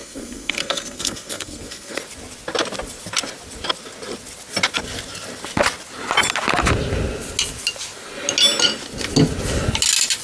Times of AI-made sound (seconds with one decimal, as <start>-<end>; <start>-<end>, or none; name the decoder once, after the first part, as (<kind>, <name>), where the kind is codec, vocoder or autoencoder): 0.0-2.0 (codec, SNAC)